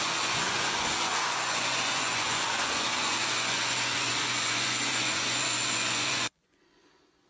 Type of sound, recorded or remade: remade